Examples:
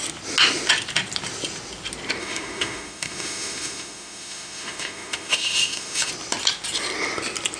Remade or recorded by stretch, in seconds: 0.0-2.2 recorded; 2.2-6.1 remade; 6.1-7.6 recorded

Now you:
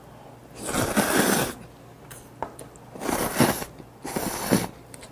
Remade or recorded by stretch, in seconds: 0.0-5.1 recorded

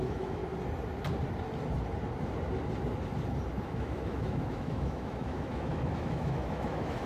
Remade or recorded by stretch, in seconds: 0.0-0.4 remade; 0.4-3.5 recorded; 3.5-7.1 remade

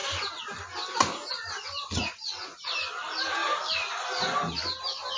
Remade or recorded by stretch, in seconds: 0.0-5.2 recorded

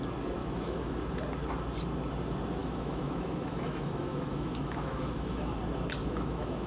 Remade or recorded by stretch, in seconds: 0.0-0.4 recorded; 0.4-1.0 remade; 1.0-2.6 recorded; 2.6-5.6 remade; 5.6-6.0 recorded; 6.0-6.7 remade

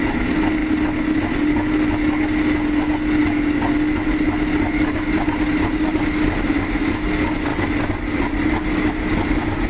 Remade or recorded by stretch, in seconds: 0.0-9.7 recorded

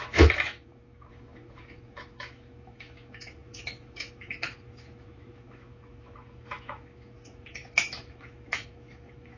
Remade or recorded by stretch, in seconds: 0.0-9.4 remade

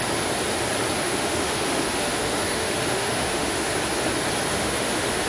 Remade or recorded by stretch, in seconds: 0.0-1.0 recorded; 1.0-3.7 remade; 3.7-4.5 recorded; 4.5-5.3 remade